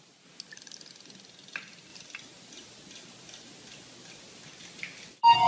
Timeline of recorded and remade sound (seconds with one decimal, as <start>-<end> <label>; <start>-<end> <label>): 0.0-5.5 recorded